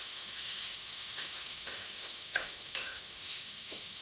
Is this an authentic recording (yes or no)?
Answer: no